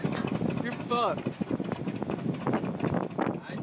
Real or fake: real